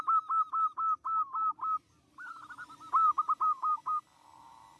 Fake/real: real